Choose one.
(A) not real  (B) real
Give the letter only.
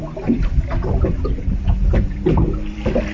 B